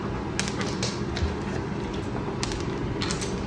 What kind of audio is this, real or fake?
real